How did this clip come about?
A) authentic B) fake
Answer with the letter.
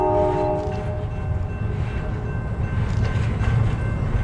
A